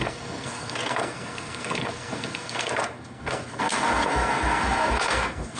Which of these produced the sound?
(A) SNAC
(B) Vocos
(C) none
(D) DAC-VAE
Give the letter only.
A